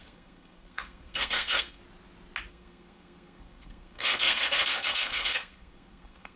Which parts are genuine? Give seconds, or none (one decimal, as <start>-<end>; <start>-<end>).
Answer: 1.8-2.5